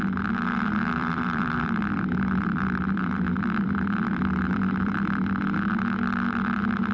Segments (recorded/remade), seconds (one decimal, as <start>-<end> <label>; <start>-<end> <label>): 0.0-1.0 recorded; 1.0-5.0 remade; 5.0-6.9 recorded